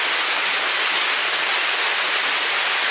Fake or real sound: real